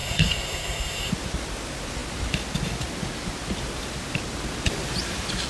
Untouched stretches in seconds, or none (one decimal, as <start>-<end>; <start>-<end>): 1.1-5.5